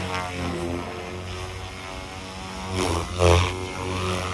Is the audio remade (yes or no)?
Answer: no